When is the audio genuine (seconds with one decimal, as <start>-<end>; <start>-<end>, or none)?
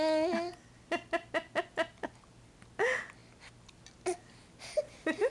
0.0-5.3